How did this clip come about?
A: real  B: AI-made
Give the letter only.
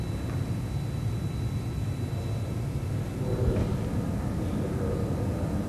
A